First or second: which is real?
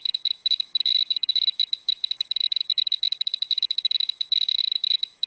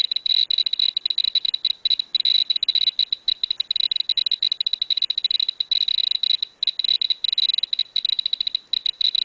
second